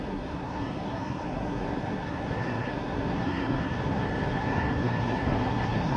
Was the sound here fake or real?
fake